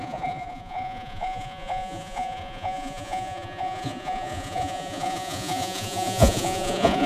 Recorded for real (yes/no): no